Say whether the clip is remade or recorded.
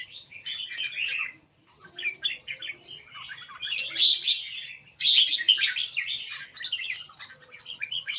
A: recorded